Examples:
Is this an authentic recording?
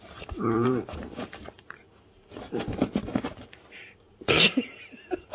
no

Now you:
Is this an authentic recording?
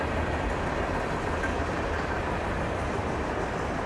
yes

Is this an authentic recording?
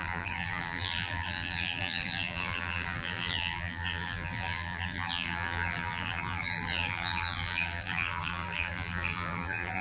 no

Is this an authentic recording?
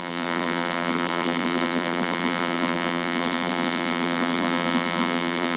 no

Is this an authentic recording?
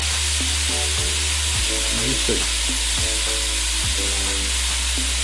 yes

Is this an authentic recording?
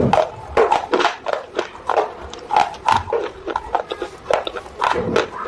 no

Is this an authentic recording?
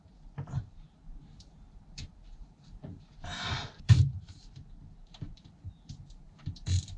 no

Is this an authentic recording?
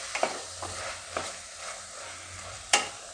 no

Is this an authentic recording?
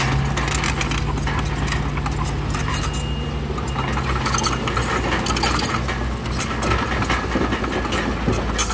yes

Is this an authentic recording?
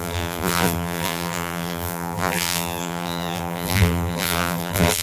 no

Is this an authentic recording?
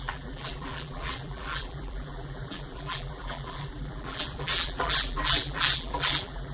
no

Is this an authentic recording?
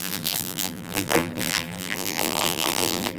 no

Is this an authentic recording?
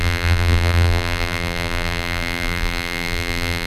no